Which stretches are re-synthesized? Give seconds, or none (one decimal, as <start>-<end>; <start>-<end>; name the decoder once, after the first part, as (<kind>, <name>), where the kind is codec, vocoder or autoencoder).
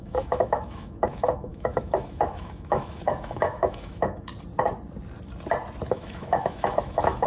0.0-4.3 (autoencoder, DAC-VAE); 5.9-7.3